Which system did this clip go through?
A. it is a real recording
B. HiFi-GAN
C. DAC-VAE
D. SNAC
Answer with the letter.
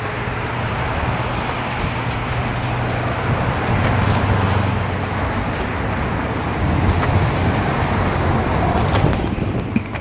A